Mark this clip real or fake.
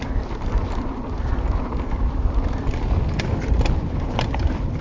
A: real